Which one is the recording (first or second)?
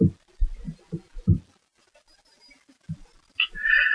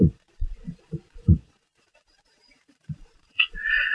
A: first